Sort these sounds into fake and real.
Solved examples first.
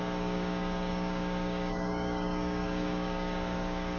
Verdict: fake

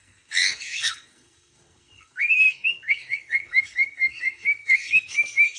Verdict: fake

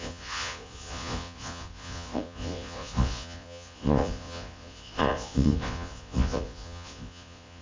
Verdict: fake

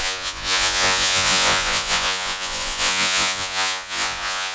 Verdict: fake